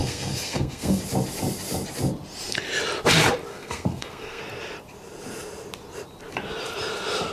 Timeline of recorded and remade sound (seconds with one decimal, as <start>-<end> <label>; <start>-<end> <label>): 0.0-1.0 remade; 1.0-3.5 recorded; 3.5-4.4 remade; 4.4-7.3 recorded